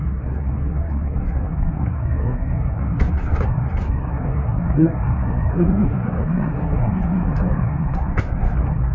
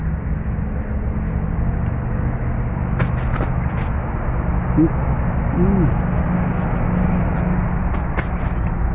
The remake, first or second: first